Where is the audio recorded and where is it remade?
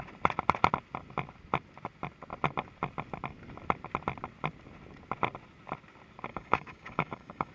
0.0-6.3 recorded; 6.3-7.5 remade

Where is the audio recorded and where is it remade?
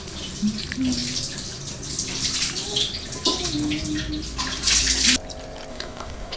0.0-5.7 recorded; 5.7-6.4 remade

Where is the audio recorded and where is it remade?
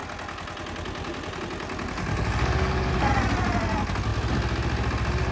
0.0-2.1 recorded; 2.1-2.9 remade; 2.9-5.3 recorded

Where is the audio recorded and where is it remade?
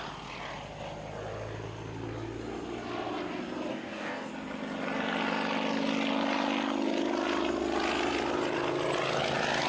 0.0-3.7 recorded; 3.7-4.3 remade; 4.3-9.7 recorded